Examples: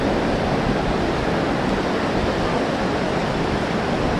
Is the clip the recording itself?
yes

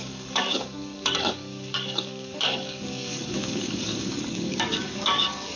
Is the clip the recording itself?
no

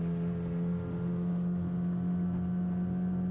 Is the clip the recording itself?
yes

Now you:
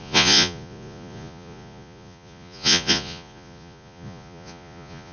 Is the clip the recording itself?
no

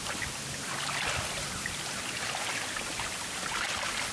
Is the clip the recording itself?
yes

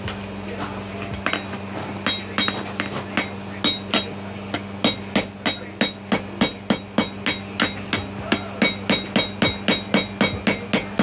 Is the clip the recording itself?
yes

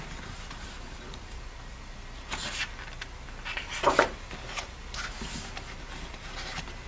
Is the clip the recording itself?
yes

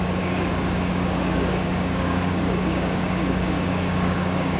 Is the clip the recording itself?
no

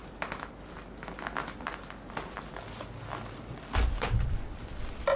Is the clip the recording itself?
yes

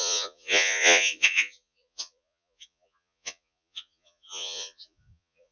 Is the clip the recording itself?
no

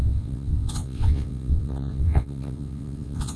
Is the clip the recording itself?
no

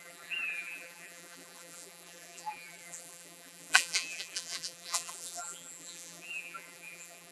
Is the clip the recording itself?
no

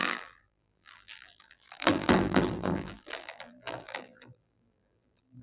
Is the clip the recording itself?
no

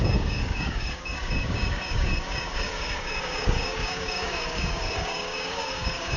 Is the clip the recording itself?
no